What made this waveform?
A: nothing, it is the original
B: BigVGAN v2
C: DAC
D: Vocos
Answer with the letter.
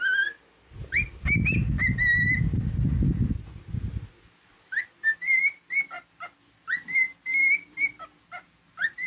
A